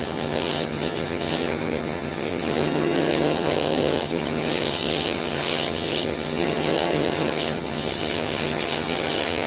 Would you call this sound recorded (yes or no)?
no